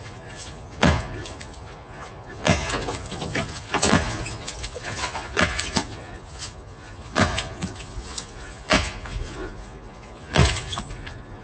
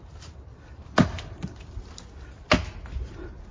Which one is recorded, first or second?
second